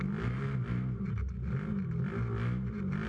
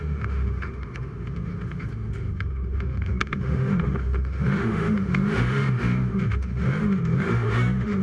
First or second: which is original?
first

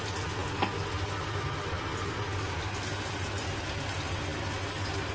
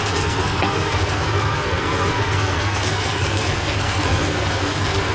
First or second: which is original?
first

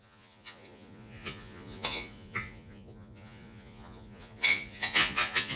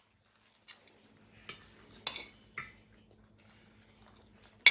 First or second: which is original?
second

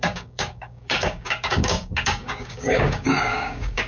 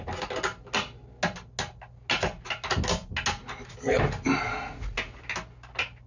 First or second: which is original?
second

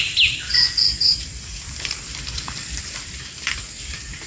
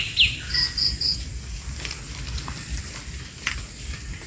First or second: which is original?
second